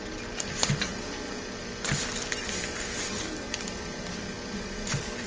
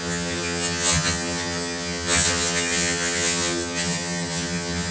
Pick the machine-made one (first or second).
second